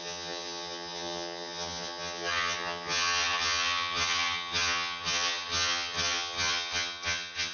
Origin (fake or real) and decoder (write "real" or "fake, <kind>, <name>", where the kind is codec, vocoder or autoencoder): fake, vocoder, HiFi-GAN